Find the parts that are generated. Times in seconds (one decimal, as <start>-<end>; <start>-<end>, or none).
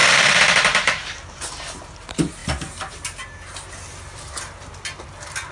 0.0-2.4